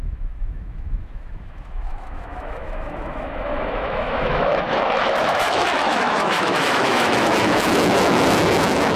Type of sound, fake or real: fake